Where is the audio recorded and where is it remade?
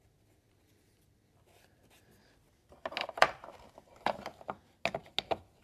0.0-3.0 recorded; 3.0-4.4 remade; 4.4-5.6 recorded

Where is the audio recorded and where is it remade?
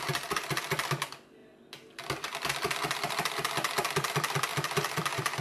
0.0-4.5 recorded; 4.5-5.4 remade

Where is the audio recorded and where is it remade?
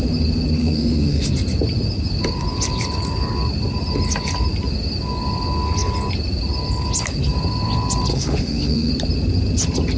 0.0-0.6 recorded; 0.6-1.3 remade; 1.3-8.1 recorded; 8.1-8.9 remade; 8.9-10.0 recorded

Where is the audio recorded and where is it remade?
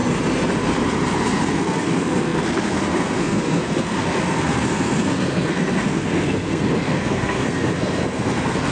0.0-1.5 recorded; 1.5-8.7 remade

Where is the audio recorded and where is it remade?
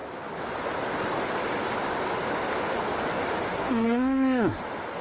0.0-3.5 recorded; 3.5-4.6 remade; 4.6-5.0 recorded